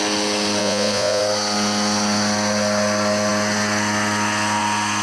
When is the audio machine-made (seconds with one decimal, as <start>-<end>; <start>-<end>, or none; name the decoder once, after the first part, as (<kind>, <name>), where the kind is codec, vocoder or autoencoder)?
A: 0.6-1.2 (vocoder, Vocos)

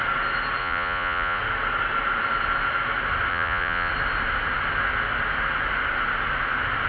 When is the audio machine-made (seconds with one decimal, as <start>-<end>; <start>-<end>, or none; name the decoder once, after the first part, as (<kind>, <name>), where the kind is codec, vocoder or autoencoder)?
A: 0.6-1.4 (vocoder, Vocos); 3.3-3.9

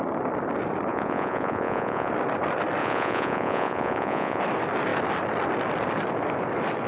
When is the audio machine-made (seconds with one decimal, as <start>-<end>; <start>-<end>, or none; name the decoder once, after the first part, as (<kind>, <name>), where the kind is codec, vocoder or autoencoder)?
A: 0.9-2.1 (vocoder, Vocos); 2.8-4.4